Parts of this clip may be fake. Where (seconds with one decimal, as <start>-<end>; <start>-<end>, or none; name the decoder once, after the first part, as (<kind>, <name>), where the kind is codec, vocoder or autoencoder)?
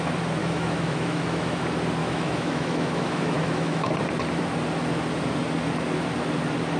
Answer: 0.4-1.6 (autoencoder, DAC-VAE); 2.0-3.9